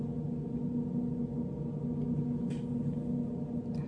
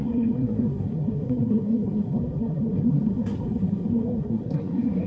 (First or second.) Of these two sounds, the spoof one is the second